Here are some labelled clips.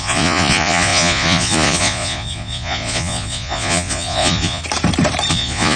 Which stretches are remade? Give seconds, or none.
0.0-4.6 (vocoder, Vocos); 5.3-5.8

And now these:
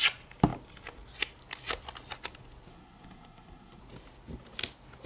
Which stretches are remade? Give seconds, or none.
2.7-3.8 (codec, SNAC)

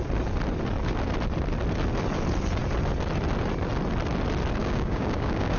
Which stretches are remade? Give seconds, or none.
4.6-5.6 (codec, DAC)

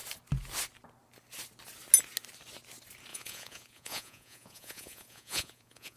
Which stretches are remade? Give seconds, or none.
3.1-6.0 (vocoder, Vocos)

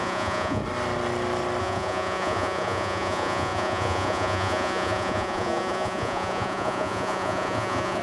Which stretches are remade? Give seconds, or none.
0.0-0.6 (vocoder, Vocos); 1.6-8.0